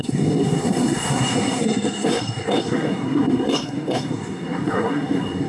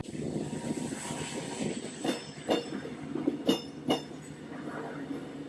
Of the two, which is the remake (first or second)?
first